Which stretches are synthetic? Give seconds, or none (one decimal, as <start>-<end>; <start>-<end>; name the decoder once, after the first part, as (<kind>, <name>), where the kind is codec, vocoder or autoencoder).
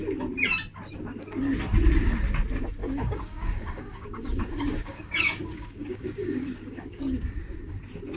2.8-7.0 (codec, DAC)